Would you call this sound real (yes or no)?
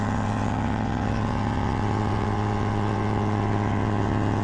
no